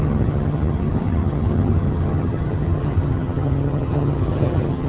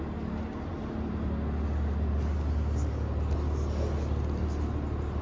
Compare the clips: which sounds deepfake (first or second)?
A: first